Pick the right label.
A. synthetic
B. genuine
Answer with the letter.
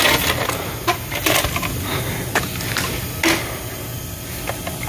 B